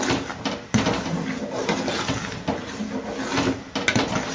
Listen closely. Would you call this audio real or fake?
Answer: real